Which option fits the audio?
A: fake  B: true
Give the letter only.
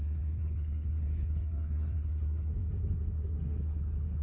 A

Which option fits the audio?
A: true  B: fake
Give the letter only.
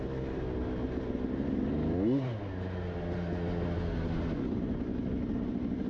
A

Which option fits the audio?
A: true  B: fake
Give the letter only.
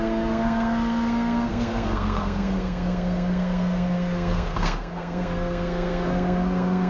B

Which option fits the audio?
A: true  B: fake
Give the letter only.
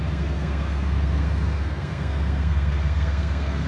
B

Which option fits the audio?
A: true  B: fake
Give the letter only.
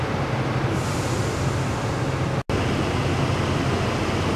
A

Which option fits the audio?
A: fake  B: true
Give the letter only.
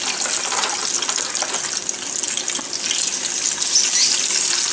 B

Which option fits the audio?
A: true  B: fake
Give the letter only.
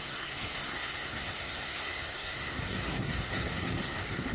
B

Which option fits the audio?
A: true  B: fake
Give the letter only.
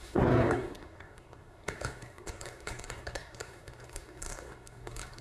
B